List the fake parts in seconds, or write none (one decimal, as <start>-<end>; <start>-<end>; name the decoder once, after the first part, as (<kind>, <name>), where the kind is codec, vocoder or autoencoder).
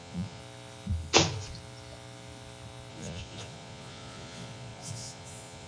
0.0-0.4 (vocoder, Vocos); 2.9-5.7